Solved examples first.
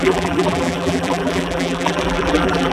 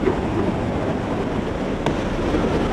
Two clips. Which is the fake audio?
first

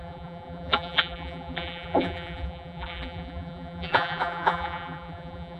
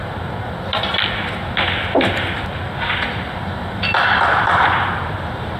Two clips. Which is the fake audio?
first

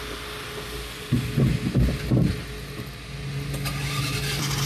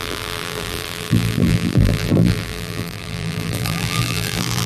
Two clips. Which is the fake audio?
second